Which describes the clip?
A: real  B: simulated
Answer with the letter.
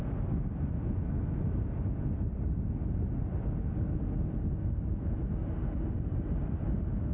A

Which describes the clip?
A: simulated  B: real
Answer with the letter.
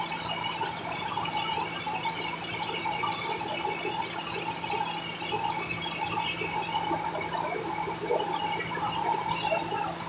B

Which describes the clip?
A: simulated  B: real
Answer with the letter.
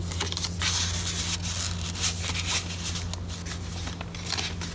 B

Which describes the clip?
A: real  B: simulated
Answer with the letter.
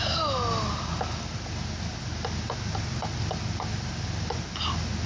A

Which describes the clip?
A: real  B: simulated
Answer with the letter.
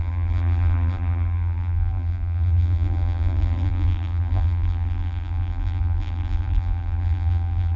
B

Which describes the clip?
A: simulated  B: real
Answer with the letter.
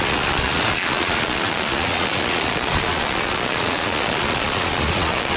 A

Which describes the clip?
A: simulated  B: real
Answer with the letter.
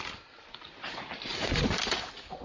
B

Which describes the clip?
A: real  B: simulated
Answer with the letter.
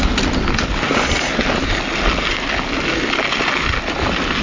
A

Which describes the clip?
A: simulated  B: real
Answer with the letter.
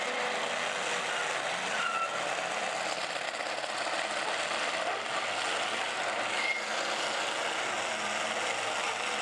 B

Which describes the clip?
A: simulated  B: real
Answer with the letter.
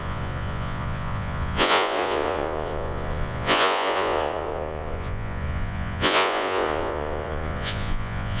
A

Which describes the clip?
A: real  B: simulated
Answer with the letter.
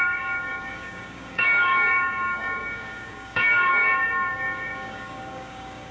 B